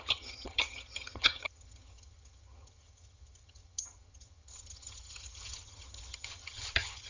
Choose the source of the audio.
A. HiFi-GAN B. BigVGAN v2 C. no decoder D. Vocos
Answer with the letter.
A